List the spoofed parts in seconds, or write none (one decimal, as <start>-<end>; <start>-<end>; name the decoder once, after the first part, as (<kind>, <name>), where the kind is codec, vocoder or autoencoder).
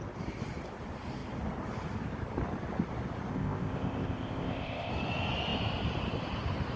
3.3-4.9 (codec, ZipCodec)